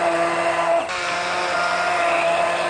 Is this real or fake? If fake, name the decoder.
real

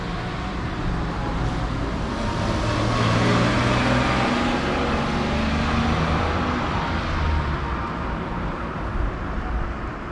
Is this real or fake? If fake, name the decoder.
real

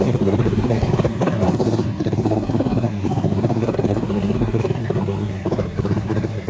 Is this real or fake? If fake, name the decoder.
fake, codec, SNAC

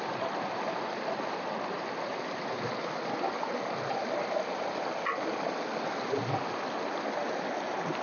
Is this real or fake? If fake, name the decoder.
real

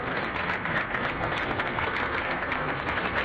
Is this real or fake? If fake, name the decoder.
fake, codec, SNAC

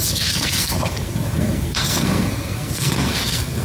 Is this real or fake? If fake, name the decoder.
fake, codec, SNAC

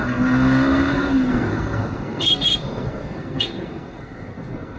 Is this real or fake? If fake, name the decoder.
fake, codec, SNAC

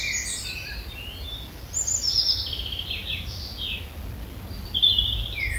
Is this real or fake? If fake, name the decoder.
real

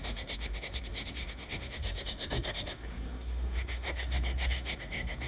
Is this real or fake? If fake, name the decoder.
fake, codec, SNAC